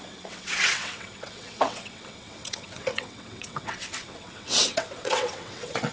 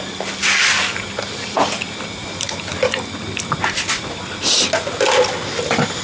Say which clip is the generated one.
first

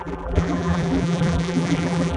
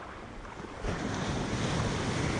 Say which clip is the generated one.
first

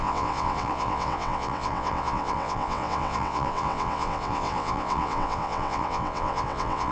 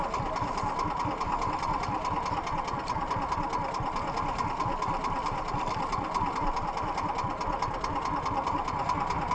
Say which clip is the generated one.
first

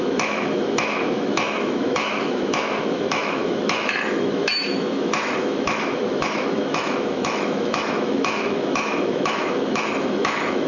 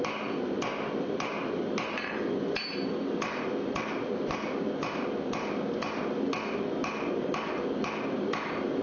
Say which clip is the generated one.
first